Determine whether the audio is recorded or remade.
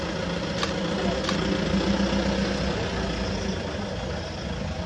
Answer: recorded